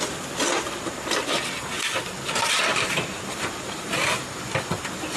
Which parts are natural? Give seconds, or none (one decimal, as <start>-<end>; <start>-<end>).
none